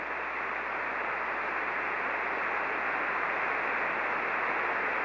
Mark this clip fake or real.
real